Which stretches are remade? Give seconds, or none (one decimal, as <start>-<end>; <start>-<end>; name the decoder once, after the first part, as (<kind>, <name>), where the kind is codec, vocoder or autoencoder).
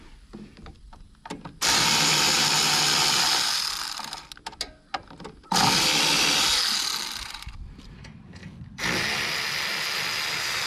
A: none